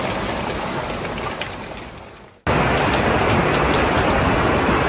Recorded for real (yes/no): yes